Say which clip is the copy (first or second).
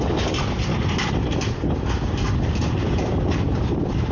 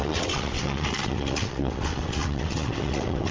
second